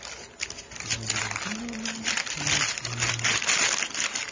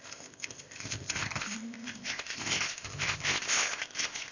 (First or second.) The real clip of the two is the first